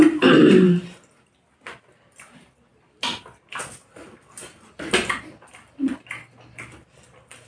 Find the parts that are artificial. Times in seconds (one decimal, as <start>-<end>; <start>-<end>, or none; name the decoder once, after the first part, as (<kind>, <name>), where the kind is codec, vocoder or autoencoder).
none